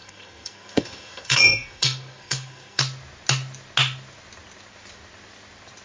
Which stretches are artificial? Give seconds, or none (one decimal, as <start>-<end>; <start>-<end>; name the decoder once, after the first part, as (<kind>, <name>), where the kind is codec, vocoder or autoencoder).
0.0-2.8 (codec, SNAC)